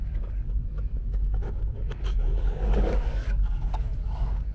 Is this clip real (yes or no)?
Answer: no